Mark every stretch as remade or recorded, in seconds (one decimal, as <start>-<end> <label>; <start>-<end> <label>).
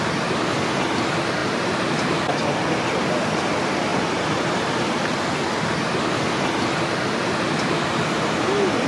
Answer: 0.0-1.4 recorded; 1.4-2.2 remade; 2.2-3.9 recorded; 3.9-4.8 remade; 4.8-8.9 recorded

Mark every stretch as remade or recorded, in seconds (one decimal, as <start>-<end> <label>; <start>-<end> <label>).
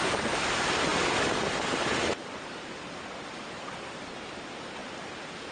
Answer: 0.0-0.9 remade; 0.9-4.2 recorded; 4.2-4.8 remade; 4.8-5.5 recorded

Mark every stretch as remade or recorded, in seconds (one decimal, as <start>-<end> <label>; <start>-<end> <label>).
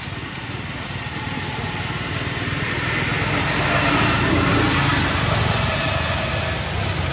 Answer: 0.0-7.1 recorded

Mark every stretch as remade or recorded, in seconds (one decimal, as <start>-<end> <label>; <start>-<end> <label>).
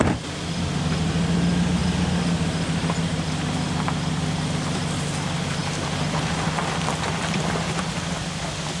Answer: 0.0-8.8 recorded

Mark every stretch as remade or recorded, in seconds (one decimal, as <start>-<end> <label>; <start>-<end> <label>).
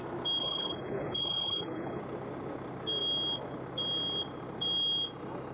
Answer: 0.0-0.4 recorded; 0.4-2.0 remade; 2.0-5.5 recorded